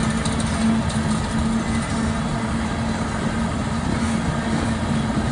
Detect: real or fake real